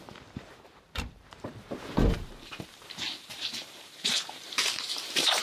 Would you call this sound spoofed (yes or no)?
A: yes